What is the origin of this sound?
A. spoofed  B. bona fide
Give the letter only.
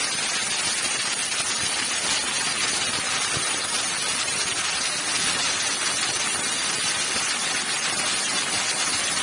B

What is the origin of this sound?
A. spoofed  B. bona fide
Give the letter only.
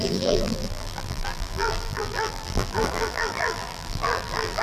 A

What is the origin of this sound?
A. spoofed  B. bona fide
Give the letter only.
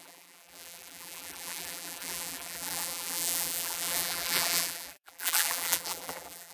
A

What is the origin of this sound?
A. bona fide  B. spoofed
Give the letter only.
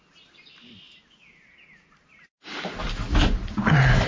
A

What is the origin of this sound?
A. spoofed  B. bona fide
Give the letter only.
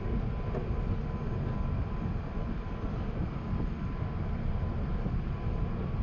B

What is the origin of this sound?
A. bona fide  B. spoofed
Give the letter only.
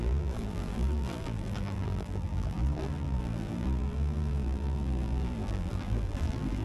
B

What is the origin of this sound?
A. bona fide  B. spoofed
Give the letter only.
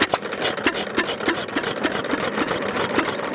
A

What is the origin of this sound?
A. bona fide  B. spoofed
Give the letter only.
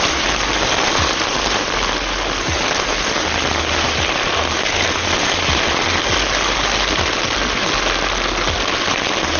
A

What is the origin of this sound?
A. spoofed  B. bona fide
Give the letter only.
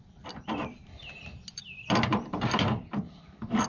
A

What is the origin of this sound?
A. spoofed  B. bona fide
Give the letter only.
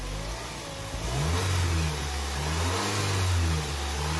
B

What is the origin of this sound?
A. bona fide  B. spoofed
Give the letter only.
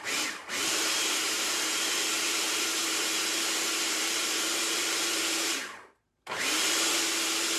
B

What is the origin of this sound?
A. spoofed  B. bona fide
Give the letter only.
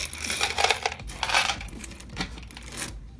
B